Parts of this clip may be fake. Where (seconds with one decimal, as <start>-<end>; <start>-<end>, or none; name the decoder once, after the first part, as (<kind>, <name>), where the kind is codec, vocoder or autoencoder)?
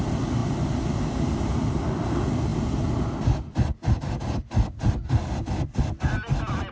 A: none